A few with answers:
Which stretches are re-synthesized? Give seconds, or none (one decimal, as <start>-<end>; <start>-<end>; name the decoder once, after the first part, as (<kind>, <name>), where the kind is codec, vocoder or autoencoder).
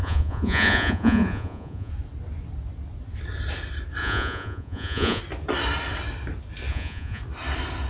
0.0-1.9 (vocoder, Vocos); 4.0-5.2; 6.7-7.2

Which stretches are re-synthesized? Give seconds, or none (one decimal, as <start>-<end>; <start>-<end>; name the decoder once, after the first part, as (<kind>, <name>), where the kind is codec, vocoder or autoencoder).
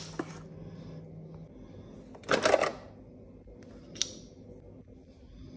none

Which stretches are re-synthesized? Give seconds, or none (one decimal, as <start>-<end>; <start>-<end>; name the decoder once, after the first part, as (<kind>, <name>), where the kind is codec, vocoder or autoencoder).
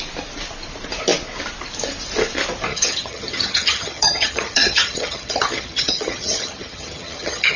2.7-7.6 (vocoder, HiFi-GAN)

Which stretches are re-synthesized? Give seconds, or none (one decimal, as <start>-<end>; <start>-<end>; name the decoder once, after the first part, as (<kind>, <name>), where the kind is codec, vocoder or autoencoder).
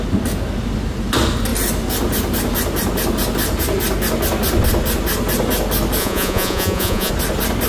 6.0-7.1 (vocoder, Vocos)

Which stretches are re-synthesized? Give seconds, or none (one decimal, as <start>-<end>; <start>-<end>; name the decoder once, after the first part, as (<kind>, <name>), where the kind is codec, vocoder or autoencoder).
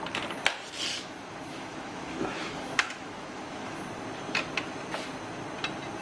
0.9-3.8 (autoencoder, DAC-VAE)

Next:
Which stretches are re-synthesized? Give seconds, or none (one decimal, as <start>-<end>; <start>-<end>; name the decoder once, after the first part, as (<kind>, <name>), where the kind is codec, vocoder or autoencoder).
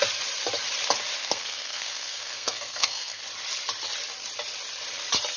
1.2-3.2 (codec, SNAC)